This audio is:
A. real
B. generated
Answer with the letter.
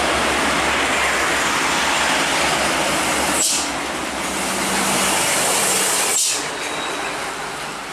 A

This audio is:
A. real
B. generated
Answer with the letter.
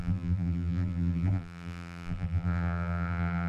B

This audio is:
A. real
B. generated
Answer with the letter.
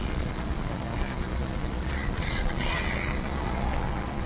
B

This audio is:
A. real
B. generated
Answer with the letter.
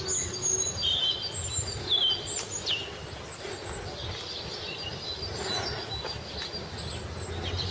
A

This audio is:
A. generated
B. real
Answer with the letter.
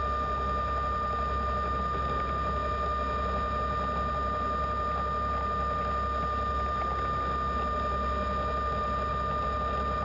B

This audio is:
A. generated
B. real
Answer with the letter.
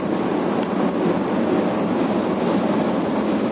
B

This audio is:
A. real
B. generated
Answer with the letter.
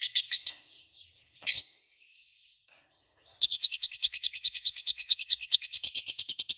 B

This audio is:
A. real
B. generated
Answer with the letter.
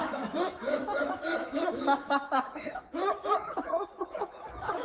B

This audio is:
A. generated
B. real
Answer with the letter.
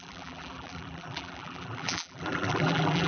A